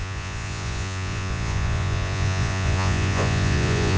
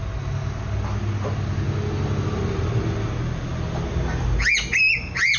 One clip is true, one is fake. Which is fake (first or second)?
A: first